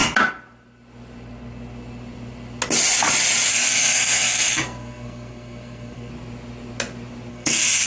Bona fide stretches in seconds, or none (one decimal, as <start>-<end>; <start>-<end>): 0.0-3.5; 6.1-7.3